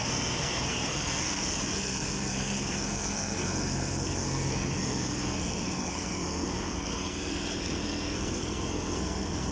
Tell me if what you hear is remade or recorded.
remade